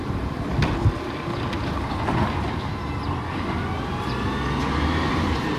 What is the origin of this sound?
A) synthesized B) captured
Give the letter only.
B